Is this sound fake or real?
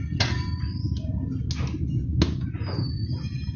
real